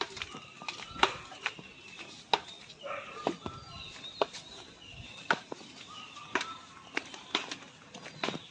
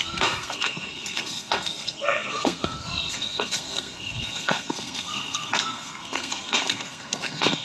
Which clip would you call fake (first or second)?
second